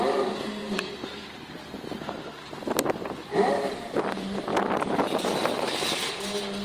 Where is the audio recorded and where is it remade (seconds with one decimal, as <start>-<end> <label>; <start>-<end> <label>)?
0.0-6.6 recorded